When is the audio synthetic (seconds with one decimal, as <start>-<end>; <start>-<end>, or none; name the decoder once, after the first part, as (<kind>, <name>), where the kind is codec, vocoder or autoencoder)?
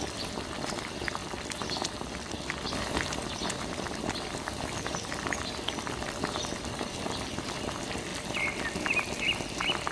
3.4-3.9 (vocoder, BigVGAN v2); 8.1-9.1